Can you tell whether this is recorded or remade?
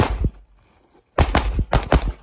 recorded